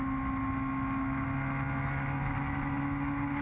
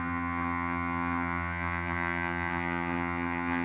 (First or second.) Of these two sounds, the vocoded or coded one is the second